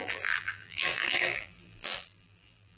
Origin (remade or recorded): remade